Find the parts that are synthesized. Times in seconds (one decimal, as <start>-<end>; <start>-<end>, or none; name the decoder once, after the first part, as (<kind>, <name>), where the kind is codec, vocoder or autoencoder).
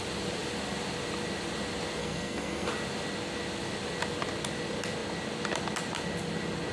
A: 2.0-2.7 (codec, SNAC)